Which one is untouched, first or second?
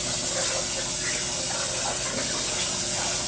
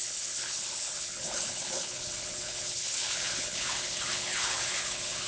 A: first